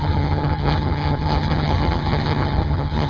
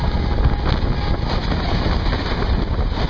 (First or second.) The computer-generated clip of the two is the first